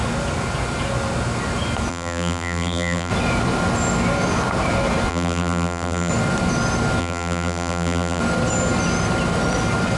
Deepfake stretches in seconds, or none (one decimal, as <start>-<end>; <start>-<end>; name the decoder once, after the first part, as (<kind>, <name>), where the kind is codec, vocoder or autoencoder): 1.9-3.1 (vocoder, BigVGAN v2); 5.1-6.1; 7.0-8.2